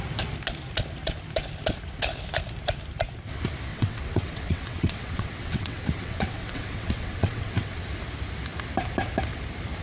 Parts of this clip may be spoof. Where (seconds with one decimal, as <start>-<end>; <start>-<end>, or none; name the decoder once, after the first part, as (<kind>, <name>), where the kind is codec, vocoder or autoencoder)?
3.7-7.8 (vocoder, WaveNeXt)